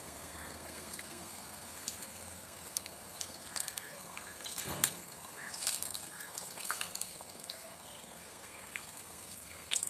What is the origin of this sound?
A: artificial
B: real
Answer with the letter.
A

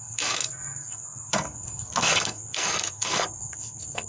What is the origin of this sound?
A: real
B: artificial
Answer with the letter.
B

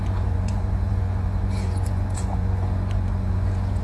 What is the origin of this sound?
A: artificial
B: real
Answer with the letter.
A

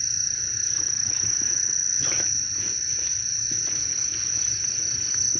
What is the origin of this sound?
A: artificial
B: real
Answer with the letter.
B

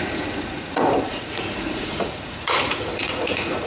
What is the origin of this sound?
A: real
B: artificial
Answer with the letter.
B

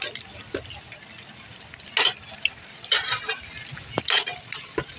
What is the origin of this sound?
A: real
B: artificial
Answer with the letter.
A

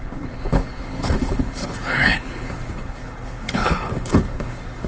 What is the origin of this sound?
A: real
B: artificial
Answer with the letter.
B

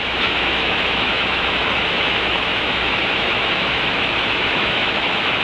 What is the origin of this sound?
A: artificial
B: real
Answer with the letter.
A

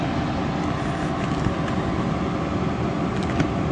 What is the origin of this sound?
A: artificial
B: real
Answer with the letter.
B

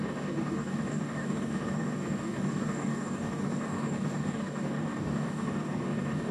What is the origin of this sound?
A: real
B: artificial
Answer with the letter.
B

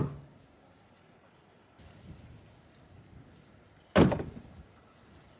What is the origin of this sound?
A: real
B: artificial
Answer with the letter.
A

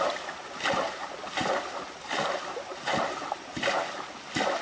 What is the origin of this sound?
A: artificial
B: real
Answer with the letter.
B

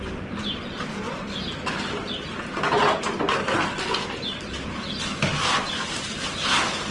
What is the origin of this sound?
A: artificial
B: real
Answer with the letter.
B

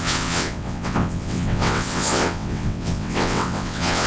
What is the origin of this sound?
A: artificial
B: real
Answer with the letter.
A